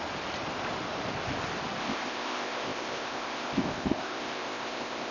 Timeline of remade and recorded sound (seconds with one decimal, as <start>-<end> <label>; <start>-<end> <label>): 0.0-1.8 recorded; 1.8-5.1 remade